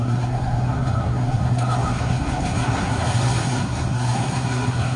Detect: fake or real fake